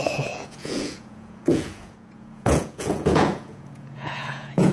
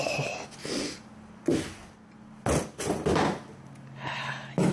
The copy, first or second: first